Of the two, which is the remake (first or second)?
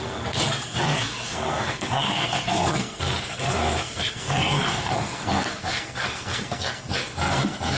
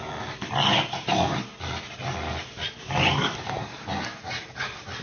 first